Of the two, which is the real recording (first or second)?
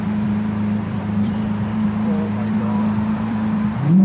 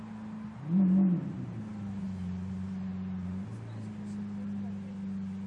second